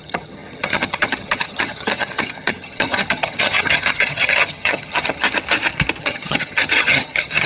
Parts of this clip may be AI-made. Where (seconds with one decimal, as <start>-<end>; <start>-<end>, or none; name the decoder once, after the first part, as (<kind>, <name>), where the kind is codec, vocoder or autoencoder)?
0.0-5.2 (vocoder, HiFi-GAN); 6.0-7.5